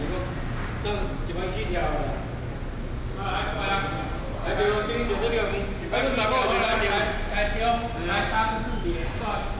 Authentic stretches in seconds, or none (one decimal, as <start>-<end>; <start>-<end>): 0.0-9.6